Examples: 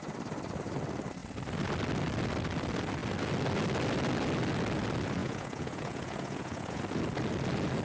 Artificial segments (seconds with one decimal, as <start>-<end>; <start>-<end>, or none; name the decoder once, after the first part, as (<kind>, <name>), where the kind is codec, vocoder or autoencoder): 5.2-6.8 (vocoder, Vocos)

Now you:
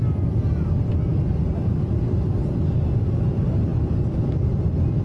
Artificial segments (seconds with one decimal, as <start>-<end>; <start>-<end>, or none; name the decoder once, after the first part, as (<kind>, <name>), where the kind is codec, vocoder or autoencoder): none

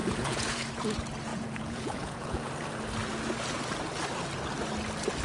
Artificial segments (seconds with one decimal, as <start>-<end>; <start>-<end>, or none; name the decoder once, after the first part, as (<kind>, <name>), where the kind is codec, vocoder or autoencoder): 0.0-0.7 (vocoder, Vocos); 1.3-2.5

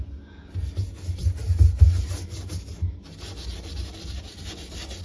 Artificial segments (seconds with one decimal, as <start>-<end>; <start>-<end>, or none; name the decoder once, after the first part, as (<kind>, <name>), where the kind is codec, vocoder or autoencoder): none

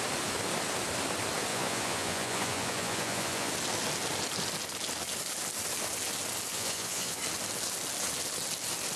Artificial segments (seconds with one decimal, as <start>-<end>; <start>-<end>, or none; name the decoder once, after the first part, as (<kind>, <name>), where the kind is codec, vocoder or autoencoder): 1.5-3.5 (vocoder, Vocos); 6.5-7.2

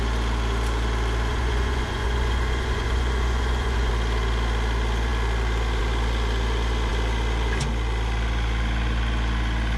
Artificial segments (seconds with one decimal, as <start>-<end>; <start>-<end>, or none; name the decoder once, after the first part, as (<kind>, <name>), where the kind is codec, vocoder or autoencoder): 1.3-3.9 (vocoder, Vocos)

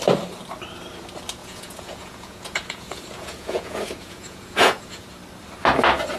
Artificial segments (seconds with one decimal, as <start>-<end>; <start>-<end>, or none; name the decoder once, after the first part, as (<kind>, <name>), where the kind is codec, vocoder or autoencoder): 1.4-5.1 (vocoder, Vocos)